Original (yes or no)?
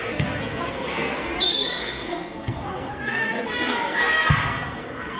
no